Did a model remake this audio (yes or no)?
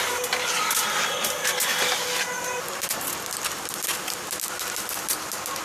no